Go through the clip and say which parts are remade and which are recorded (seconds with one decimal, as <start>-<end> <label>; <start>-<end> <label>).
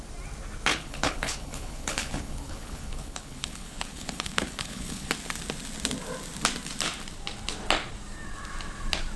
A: 0.0-0.7 recorded; 0.7-5.1 remade; 5.1-9.2 recorded